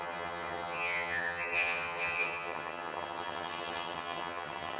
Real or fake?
fake